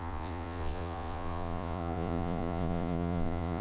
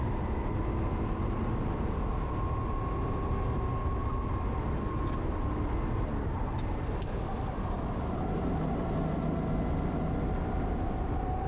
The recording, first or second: second